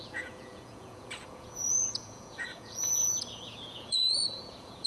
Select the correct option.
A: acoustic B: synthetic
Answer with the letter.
B